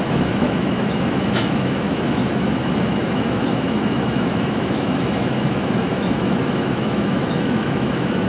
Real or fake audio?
fake